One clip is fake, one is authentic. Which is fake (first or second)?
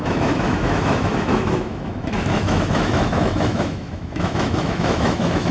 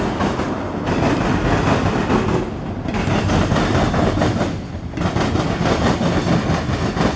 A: first